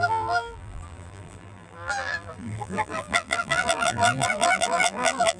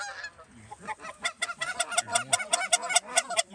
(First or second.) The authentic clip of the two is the second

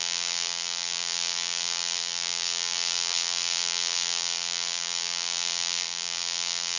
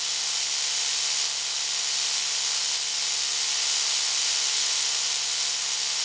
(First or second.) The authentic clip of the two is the second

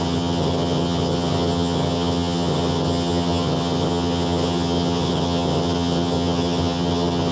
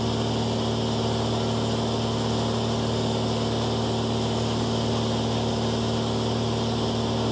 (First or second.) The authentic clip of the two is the second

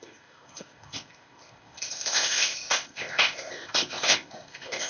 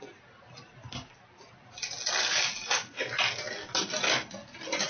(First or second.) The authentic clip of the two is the second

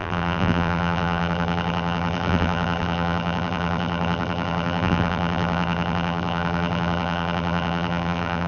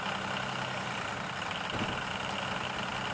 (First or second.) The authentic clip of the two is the second